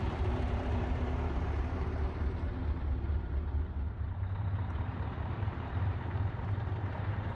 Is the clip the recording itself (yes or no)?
no